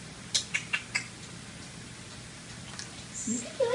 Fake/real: real